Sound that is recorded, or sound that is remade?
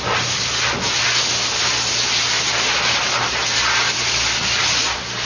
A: recorded